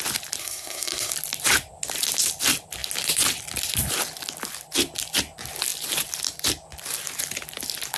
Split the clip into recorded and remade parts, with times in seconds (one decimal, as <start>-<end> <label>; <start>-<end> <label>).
0.0-0.4 recorded; 0.4-1.1 remade; 1.1-8.0 recorded